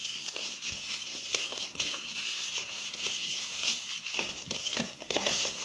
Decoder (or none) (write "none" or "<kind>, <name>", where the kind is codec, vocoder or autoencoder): codec, SNAC